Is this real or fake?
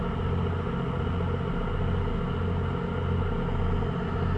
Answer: real